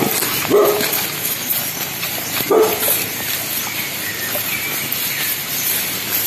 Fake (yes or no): no